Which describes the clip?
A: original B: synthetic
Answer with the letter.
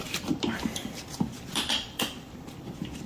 B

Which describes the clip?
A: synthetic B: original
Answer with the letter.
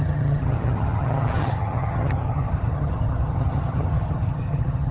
A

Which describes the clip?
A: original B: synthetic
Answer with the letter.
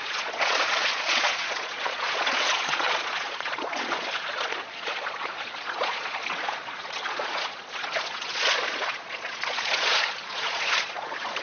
B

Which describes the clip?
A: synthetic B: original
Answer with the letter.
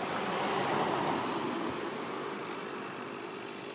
B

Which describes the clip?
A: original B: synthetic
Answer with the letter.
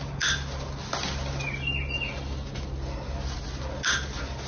A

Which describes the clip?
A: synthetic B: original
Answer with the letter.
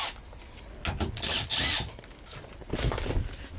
B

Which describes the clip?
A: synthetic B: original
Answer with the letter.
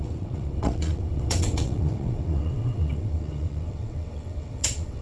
A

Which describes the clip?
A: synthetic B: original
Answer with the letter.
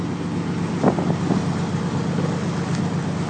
B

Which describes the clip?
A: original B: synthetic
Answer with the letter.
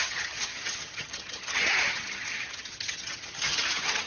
B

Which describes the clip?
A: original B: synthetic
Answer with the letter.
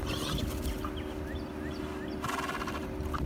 A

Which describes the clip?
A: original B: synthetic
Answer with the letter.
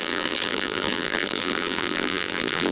B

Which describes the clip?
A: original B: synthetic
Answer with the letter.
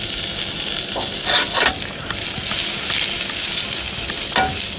A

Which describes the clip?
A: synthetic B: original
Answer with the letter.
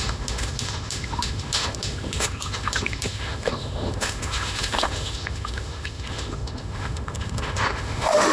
A